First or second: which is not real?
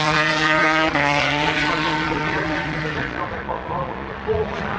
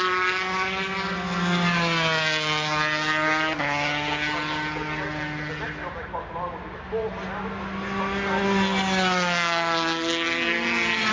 first